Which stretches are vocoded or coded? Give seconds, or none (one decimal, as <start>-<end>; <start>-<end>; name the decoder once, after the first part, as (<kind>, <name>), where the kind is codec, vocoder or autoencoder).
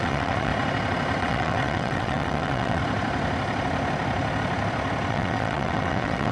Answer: 0.0-0.5 (vocoder, WaveNeXt); 1.2-2.8; 5.1-6.3